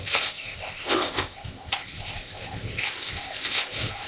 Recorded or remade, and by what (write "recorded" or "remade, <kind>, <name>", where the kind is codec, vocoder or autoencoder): remade, codec, ZipCodec